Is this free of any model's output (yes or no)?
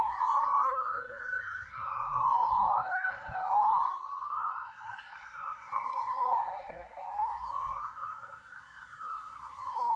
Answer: no